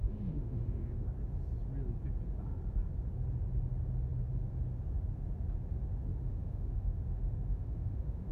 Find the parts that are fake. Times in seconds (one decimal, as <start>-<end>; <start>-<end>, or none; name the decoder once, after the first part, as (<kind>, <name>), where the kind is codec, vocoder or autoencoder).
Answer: 0.0-1.1 (autoencoder, DAC-VAE); 6.1-8.3